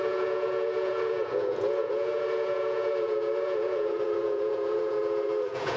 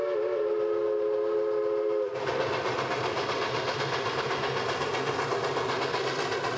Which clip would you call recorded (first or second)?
second